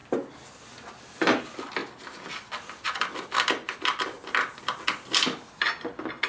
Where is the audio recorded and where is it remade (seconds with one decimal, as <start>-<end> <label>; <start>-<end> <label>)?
0.0-6.3 recorded